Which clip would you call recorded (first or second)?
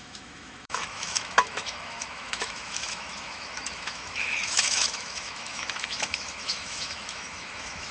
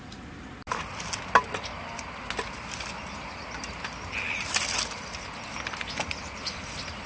second